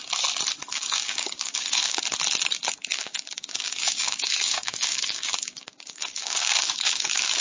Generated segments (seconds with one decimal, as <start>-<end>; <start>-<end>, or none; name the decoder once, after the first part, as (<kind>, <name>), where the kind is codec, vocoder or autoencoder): 0.7-2.0 (codec, DAC); 2.9-7.4